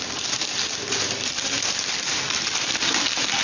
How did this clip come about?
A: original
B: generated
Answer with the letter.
A